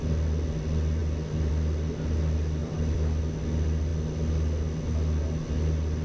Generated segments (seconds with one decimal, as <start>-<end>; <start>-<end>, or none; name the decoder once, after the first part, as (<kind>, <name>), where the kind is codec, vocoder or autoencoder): 2.6-3.2 (vocoder, BigVGAN v2)